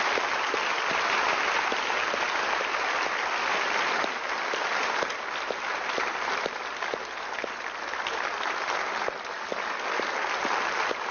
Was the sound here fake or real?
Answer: real